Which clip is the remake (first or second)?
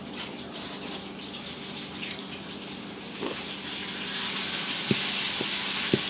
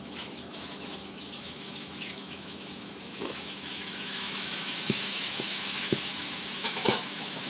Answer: second